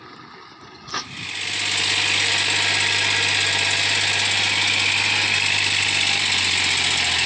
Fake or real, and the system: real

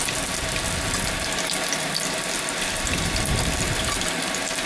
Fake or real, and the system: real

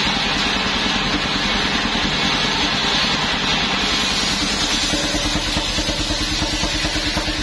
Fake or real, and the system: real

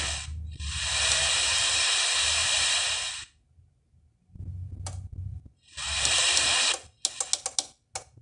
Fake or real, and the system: real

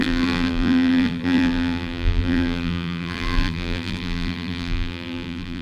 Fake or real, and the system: fake, vocoder, BigVGAN v2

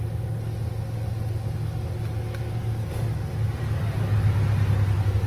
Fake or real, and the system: real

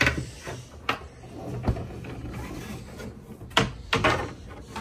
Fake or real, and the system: real